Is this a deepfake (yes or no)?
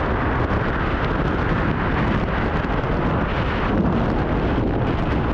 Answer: no